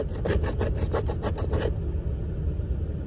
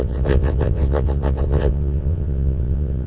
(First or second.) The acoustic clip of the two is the first